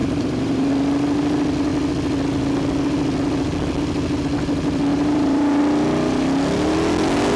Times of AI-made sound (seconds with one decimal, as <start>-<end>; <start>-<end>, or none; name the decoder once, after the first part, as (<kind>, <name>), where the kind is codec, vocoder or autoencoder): 0.0-0.7 (vocoder, BigVGAN v2); 4.9-5.6